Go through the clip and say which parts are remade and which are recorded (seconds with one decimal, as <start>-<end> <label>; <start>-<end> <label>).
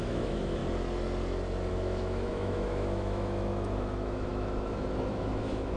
0.0-0.6 remade; 0.6-1.7 recorded; 1.7-5.8 remade